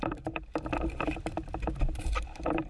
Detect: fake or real fake